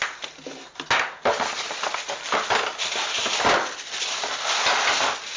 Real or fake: real